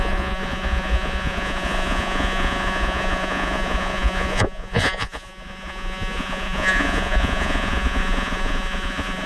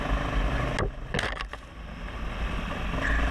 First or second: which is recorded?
second